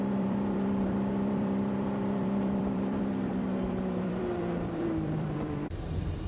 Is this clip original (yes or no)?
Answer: no